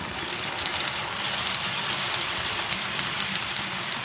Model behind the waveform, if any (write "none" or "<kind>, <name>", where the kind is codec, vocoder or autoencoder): vocoder, BigVGAN v2